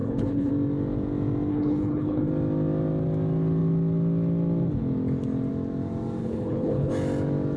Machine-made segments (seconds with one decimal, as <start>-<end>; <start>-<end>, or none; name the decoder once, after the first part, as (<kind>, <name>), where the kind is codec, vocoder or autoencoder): 0.0-0.5 (codec, HILCodec); 1.5-2.3; 6.2-6.9